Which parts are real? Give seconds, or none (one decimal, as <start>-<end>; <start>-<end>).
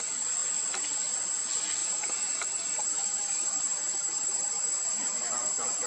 0.0-1.8; 5.3-5.9